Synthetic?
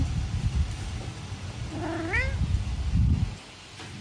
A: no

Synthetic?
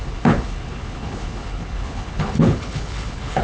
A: yes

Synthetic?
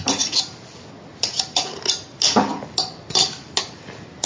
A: no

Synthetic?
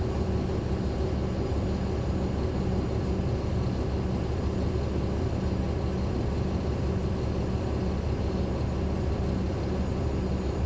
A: no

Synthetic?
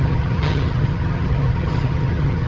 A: yes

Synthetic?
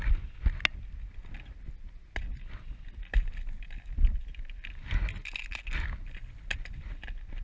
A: no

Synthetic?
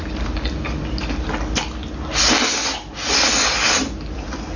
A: no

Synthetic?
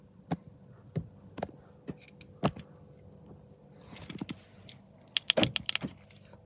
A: no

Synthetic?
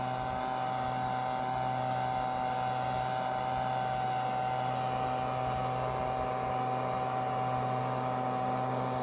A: no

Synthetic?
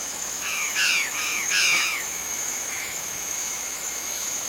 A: yes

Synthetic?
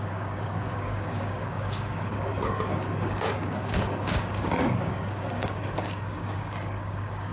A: yes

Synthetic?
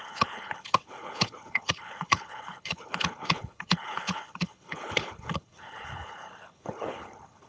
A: yes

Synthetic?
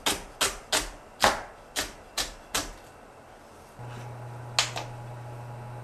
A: no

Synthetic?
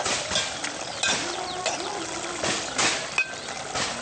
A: no